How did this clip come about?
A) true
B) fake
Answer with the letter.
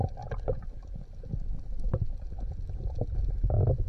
A